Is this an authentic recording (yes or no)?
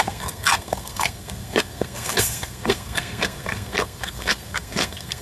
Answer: no